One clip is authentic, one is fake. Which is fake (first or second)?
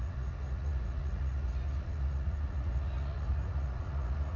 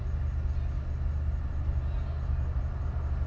first